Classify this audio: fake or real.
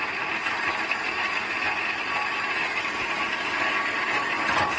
real